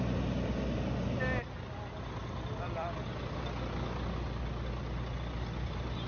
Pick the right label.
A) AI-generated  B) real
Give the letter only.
B